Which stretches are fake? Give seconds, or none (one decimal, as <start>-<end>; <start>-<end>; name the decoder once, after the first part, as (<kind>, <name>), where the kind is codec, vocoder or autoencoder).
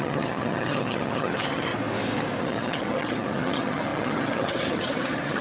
0.0-1.7 (vocoder, HiFi-GAN); 2.4-5.4